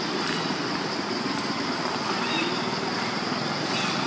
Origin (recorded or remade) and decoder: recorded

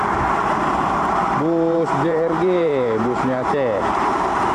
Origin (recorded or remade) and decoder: remade, vocoder, BigVGAN v2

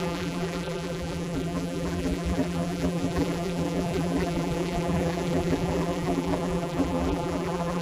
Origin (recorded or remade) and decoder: remade, vocoder, BigVGAN v2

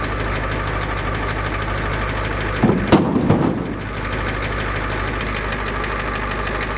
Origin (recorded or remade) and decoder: recorded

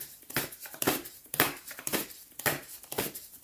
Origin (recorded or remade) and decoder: remade, vocoder, BigVGAN v2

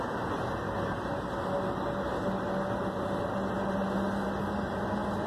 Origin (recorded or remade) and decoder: recorded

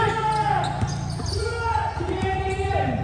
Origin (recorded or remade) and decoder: recorded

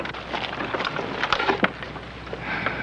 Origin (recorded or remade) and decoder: recorded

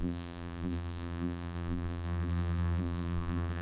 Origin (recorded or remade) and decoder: remade, vocoder, BigVGAN v2